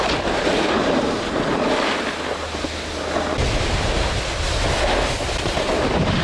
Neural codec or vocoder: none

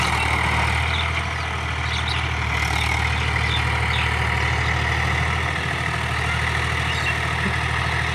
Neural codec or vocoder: none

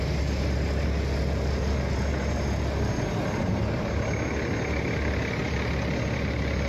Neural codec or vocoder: none